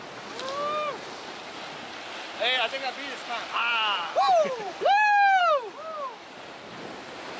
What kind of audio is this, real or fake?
real